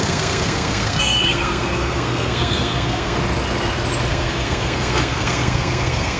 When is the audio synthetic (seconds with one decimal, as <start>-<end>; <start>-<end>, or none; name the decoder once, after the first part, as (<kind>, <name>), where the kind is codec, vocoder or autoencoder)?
0.0-3.2 (codec, SNAC); 4.1-6.2